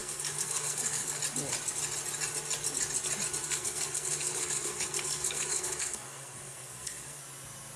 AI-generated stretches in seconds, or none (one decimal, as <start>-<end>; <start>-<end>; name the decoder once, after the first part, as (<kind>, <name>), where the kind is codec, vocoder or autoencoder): 0.0-1.2 (codec, SNAC); 3.4-7.2